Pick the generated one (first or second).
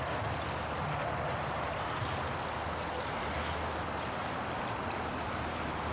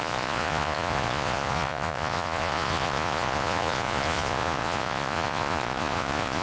second